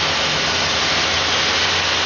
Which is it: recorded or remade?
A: recorded